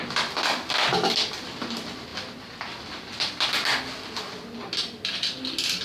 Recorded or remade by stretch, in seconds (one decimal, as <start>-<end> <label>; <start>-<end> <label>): 0.0-5.8 recorded